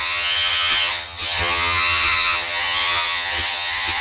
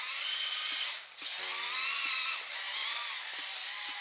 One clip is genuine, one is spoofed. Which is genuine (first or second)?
second